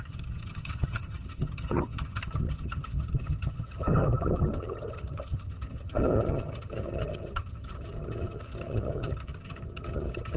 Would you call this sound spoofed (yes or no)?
yes